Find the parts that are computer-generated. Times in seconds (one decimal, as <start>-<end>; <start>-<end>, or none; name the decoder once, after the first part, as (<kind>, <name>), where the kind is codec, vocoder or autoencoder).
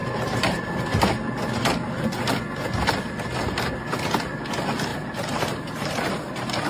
0.0-0.8 (vocoder, BigVGAN v2); 4.9-6.1